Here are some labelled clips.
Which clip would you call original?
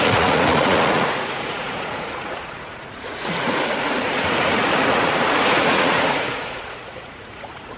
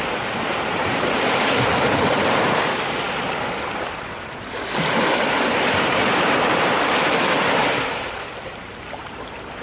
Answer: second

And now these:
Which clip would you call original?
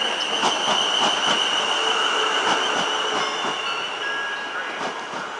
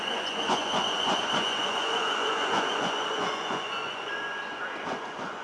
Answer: first